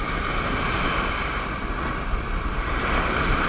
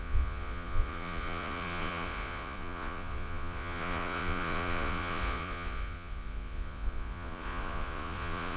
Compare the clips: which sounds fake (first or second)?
second